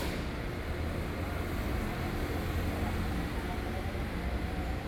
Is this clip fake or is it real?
real